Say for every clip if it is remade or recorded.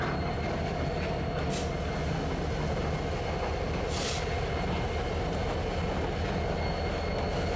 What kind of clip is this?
recorded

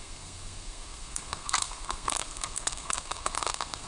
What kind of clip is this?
remade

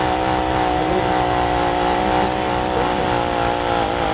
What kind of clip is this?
recorded